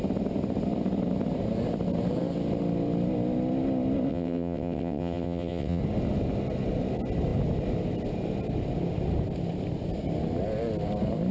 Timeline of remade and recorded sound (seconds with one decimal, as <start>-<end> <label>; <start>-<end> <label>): 0.0-4.1 recorded; 4.1-5.8 remade; 5.8-11.3 recorded